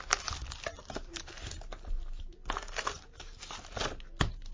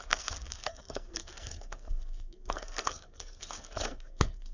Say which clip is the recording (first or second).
first